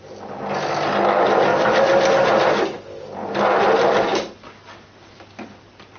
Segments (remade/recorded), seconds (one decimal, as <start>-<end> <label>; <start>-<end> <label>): 0.0-6.0 recorded

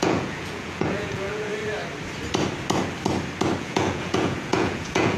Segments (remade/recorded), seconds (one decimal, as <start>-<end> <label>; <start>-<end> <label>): 0.0-1.5 remade; 1.5-3.6 recorded; 3.6-5.2 remade

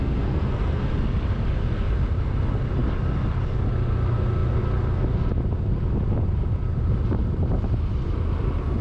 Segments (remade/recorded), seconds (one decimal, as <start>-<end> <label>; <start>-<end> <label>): 0.0-0.8 remade; 0.8-8.8 recorded

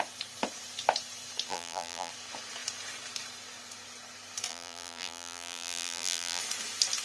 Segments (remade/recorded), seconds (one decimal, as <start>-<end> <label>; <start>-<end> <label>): 0.0-1.5 recorded; 1.5-2.1 remade; 2.1-4.5 recorded; 4.5-6.4 remade; 6.4-7.0 recorded

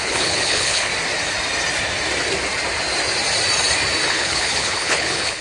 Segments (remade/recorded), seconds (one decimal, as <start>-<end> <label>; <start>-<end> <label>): 0.0-0.9 remade; 0.9-4.1 recorded; 4.1-5.4 remade

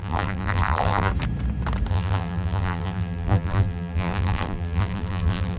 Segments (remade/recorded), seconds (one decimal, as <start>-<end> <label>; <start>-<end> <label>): 0.0-1.1 remade; 1.1-1.9 recorded; 1.9-5.6 remade